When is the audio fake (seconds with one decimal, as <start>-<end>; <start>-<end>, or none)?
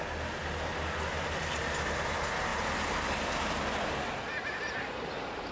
none